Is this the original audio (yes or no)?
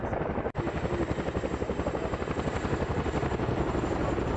yes